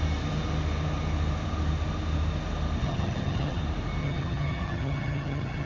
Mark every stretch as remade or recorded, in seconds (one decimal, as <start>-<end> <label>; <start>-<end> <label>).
0.0-2.8 recorded; 2.8-3.6 remade; 3.6-4.0 recorded; 4.0-5.7 remade